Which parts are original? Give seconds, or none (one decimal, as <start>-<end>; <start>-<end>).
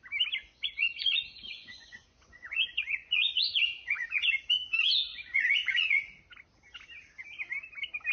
0.0-0.4; 4.4-5.1; 6.2-8.1